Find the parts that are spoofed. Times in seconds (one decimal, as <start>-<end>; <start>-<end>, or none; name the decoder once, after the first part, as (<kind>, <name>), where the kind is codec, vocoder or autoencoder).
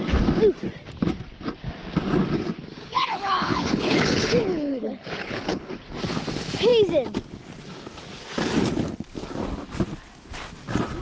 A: 2.9-5.7 (codec, HILCodec)